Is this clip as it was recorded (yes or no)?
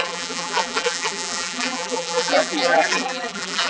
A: no